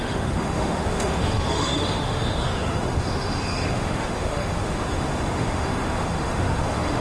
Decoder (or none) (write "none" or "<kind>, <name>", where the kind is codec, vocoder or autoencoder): autoencoder, DAC-VAE